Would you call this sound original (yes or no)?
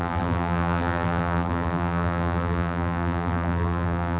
no